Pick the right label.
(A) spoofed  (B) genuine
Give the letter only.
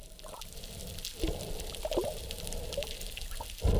B